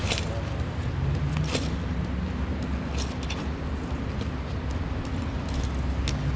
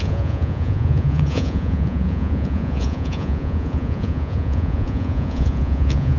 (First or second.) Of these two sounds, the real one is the first